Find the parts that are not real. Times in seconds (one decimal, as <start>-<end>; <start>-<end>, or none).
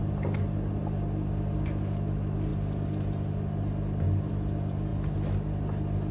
none